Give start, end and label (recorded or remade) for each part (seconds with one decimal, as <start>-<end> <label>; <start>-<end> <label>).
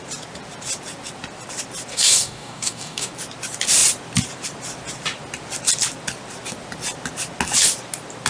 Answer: 0.0-1.9 recorded; 1.9-3.1 remade; 3.1-8.3 recorded